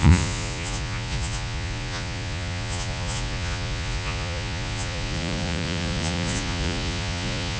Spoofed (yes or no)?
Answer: yes